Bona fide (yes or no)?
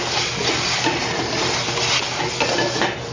yes